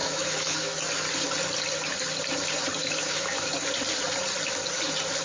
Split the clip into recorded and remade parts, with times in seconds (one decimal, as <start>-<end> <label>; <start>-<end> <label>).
0.0-0.8 remade; 0.8-2.8 recorded; 2.8-3.5 remade; 3.5-5.2 recorded